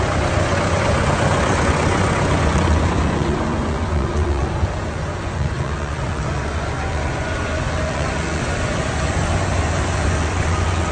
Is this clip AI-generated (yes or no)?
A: yes